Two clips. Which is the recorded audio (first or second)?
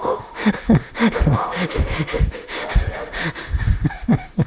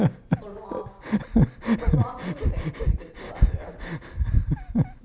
second